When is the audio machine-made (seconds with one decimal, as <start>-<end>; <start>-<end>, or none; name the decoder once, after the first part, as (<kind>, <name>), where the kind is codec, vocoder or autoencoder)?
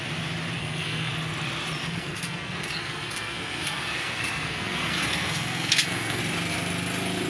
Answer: 0.6-1.1 (codec, SNAC); 1.8-6.2